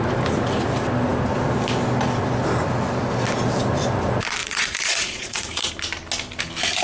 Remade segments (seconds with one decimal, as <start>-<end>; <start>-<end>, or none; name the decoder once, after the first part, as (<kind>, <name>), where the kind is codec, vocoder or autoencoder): 4.4-5.7 (vocoder, Vocos)